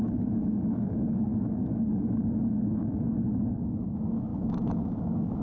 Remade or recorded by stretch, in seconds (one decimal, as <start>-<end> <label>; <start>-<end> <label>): 0.0-5.4 remade